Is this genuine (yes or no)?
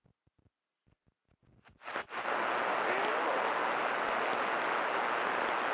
yes